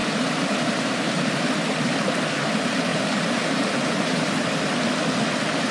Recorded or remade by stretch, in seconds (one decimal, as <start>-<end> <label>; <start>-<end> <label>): 0.0-1.4 remade; 1.4-2.9 recorded; 2.9-4.5 remade; 4.5-5.7 recorded